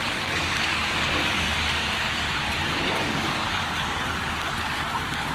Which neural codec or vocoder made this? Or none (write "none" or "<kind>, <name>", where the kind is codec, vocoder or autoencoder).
codec, DAC